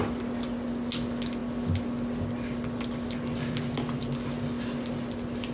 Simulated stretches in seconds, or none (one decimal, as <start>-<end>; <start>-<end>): none